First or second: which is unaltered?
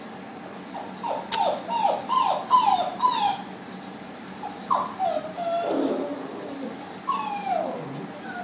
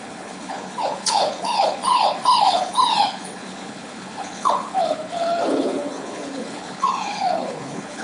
first